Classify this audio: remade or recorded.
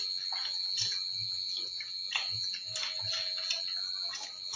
recorded